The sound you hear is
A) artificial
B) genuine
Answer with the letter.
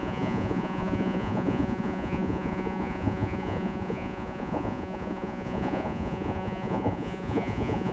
A